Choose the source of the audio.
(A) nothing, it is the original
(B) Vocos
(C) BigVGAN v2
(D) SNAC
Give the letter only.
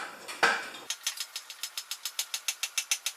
A